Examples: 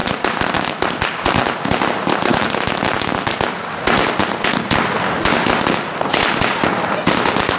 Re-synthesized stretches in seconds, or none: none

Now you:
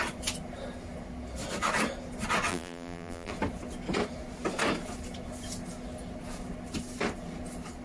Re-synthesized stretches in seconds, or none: 2.5-3.3 (vocoder, BigVGAN v2)

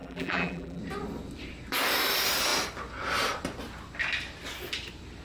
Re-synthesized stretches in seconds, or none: 0.0-0.8 (vocoder, BigVGAN v2)